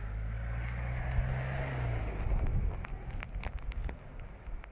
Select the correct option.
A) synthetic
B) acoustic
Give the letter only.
B